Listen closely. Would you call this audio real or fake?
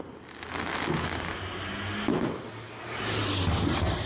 real